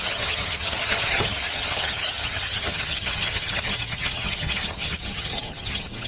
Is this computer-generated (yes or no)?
yes